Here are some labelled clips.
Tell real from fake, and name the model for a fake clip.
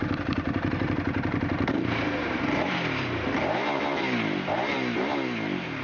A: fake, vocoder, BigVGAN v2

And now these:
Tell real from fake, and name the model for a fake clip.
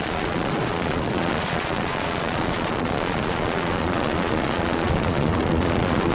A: fake, vocoder, Vocos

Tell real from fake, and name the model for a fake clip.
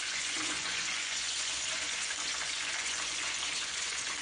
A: fake, vocoder, Vocos